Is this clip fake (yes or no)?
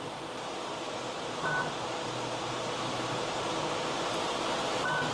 yes